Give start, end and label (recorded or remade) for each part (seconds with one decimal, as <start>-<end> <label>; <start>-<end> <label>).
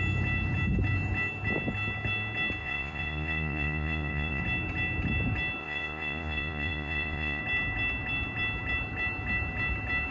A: 0.0-2.6 recorded; 2.6-4.4 remade; 4.4-5.6 recorded; 5.6-7.4 remade; 7.4-10.1 recorded